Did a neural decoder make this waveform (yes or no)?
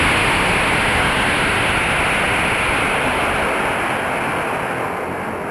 no